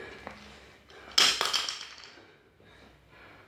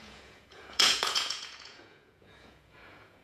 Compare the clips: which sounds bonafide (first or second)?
first